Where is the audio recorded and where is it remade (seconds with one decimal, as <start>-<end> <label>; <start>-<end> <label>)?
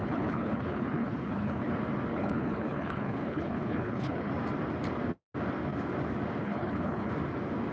0.0-1.7 remade; 1.7-2.1 recorded; 2.1-4.3 remade; 4.3-6.4 recorded; 6.4-7.1 remade; 7.1-7.7 recorded